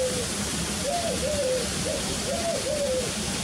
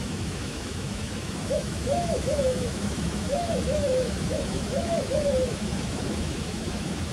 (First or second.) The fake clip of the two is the second